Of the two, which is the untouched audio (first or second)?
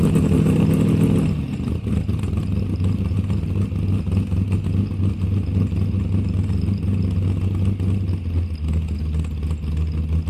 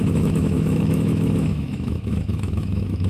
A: first